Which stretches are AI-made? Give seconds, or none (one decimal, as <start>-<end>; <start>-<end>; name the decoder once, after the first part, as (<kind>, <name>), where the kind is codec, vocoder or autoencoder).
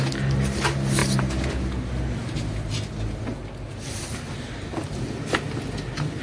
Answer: 1.0-1.5 (vocoder, BigVGAN v2); 2.2-2.9